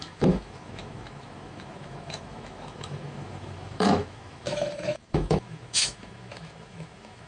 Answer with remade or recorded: remade